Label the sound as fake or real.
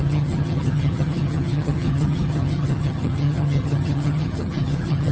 fake